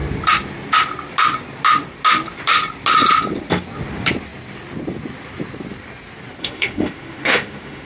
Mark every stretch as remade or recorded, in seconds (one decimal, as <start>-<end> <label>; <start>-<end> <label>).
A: 0.0-6.4 recorded; 6.4-7.9 remade